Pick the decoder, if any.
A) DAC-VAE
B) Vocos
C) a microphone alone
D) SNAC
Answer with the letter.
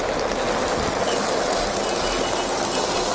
C